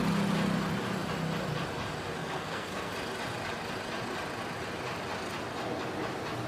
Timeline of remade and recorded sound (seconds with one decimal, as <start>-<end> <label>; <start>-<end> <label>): 0.0-2.2 recorded; 2.2-2.9 remade; 2.9-6.5 recorded